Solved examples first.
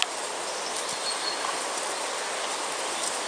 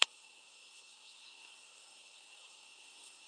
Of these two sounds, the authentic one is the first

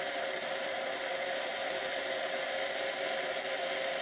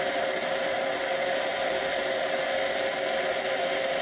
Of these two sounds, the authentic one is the second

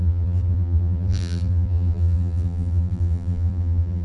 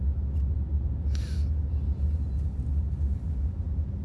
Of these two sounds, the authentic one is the second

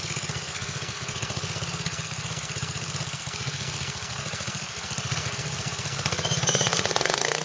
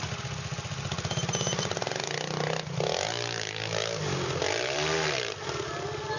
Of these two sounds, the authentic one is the second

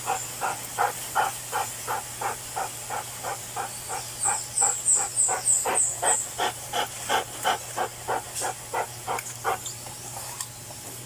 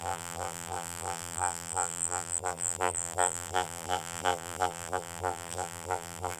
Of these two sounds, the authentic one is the first